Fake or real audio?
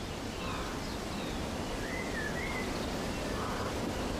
real